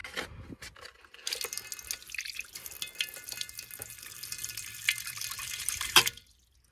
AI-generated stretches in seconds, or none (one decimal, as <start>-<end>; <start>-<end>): 5.4-6.0